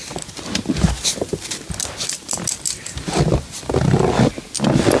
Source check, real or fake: real